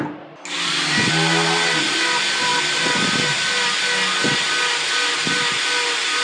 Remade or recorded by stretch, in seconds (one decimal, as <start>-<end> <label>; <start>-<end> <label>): 0.0-6.2 recorded